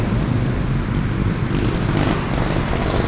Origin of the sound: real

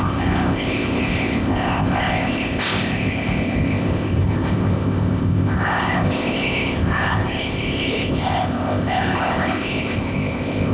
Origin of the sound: fake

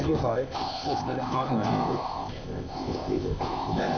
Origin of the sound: fake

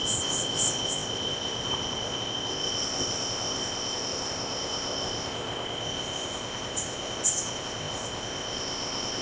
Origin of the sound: fake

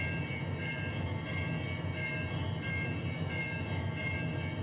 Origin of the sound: real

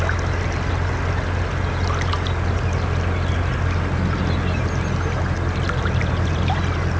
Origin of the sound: real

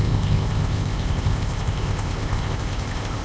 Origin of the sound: fake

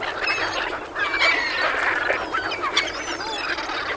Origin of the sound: real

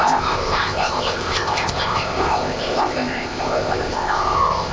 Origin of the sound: fake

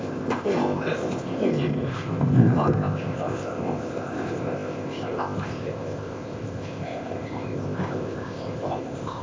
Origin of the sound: fake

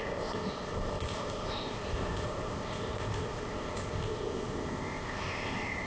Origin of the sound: fake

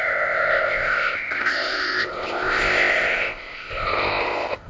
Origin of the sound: fake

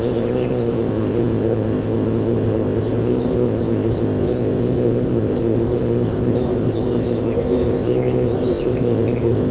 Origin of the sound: fake